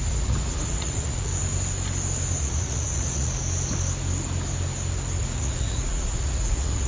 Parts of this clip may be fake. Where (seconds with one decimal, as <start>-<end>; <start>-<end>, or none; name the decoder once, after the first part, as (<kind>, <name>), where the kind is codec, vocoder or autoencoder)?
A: 0.0-1.3 (vocoder, Vocos); 2.4-3.4; 5.2-6.9